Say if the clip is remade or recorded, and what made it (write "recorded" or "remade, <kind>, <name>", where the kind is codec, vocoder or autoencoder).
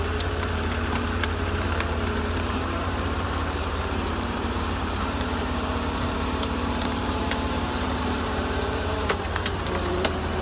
remade, vocoder, BigVGAN v2